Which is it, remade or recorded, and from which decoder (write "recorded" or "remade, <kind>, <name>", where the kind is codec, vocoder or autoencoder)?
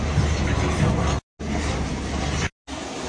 recorded